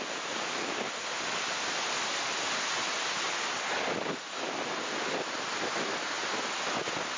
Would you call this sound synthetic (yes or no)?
no